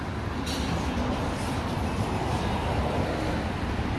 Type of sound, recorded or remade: recorded